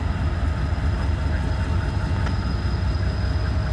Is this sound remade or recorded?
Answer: recorded